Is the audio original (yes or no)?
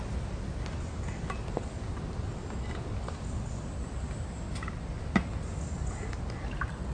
yes